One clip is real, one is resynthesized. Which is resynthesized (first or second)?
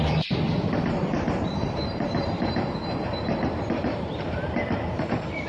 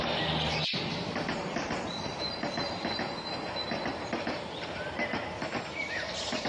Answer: first